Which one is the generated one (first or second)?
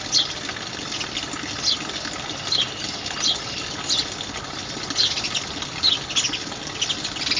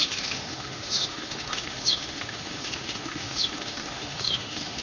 second